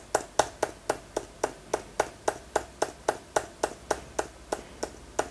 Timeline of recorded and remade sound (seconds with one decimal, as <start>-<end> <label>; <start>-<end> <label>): 0.0-5.3 recorded